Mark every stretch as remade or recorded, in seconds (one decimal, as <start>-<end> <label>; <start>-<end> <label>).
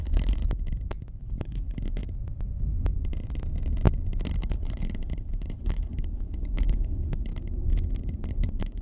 0.0-0.4 remade; 0.4-1.2 recorded; 1.2-2.0 remade; 2.0-4.4 recorded; 4.4-7.3 remade; 7.3-8.3 recorded; 8.3-8.8 remade